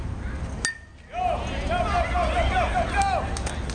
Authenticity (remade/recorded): recorded